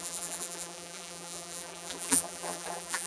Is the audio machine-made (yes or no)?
yes